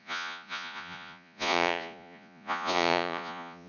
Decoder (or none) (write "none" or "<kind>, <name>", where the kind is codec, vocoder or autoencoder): vocoder, Vocos